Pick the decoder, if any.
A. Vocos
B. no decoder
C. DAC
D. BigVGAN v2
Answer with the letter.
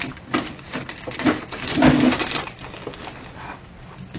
B